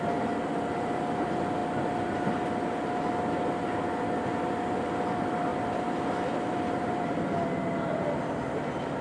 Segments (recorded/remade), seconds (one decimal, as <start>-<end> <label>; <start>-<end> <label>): 0.0-1.6 remade; 1.6-4.3 recorded; 4.3-9.0 remade